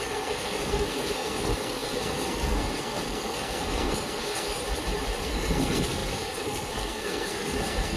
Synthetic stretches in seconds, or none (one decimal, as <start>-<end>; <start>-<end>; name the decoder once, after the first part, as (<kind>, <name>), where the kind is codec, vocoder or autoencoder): 0.0-4.6 (codec, SNAC); 5.2-8.0